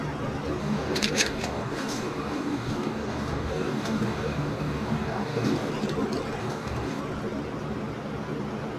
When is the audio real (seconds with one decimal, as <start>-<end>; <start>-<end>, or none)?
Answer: 0.0-0.6; 5.7-6.4; 7.0-8.8